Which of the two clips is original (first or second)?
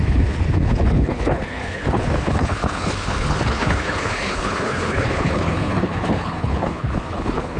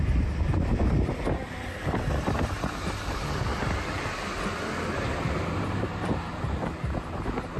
second